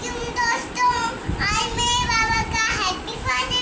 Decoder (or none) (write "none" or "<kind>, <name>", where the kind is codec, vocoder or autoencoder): none